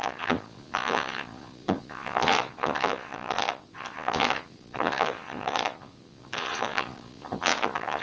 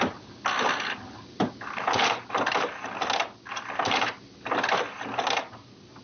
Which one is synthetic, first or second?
first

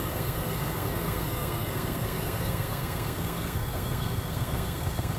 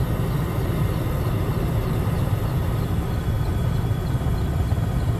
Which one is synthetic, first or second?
first